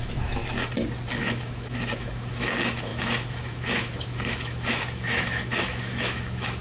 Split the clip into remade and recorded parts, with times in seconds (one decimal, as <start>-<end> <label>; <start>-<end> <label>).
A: 0.0-0.4 remade; 0.4-1.2 recorded; 1.2-6.6 remade

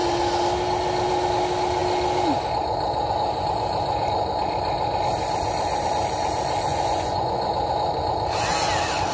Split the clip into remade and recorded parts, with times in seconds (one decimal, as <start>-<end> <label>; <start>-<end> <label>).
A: 0.0-6.7 recorded; 6.7-7.5 remade; 7.5-9.1 recorded